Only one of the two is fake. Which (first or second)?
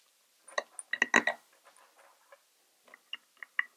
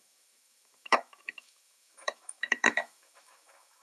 second